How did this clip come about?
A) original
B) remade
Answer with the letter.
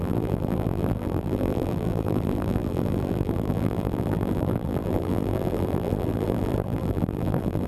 B